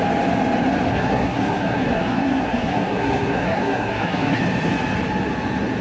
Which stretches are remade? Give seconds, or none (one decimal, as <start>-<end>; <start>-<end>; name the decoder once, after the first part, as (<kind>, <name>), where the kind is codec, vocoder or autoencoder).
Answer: 0.9-4.4 (codec, SNAC)